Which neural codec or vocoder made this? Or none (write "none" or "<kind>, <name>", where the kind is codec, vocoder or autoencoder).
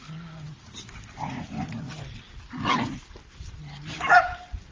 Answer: none